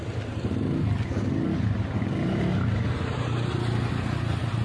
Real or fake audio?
real